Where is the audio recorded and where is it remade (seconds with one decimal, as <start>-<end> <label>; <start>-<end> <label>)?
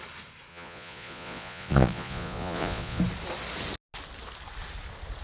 0.0-0.5 recorded; 0.5-3.0 remade; 3.0-5.2 recorded